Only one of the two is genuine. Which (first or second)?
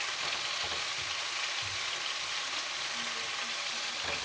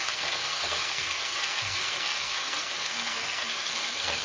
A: first